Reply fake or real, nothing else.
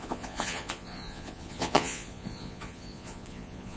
fake